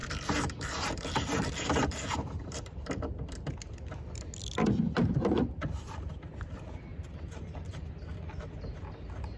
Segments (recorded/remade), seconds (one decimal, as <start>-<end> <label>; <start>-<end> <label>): 0.0-2.9 remade; 2.9-6.9 recorded; 6.9-7.9 remade; 7.9-9.4 recorded